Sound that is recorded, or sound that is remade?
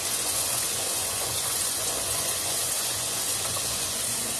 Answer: remade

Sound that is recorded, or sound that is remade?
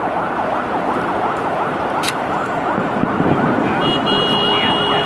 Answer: recorded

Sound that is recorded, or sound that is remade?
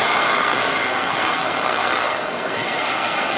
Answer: remade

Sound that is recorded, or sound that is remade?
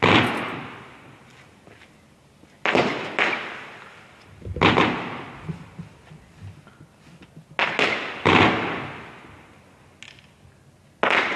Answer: recorded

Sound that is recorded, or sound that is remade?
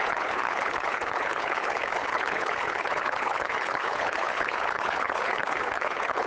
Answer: remade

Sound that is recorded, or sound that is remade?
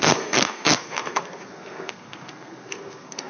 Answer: remade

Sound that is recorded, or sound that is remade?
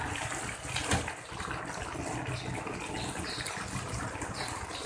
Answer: recorded